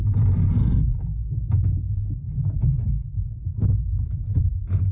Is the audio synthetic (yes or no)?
yes